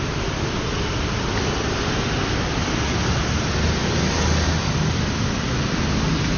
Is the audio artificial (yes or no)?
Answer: no